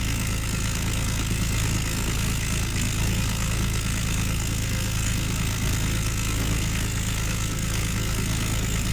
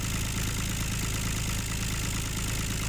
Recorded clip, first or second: second